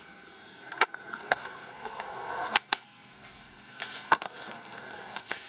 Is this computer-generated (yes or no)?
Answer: yes